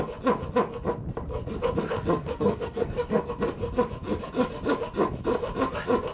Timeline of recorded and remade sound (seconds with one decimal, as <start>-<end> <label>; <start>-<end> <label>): 0.0-2.2 recorded; 2.2-3.3 remade; 3.3-6.1 recorded